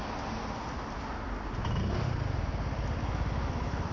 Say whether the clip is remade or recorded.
recorded